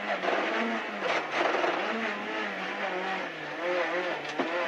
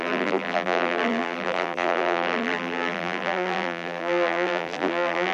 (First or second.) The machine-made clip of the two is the second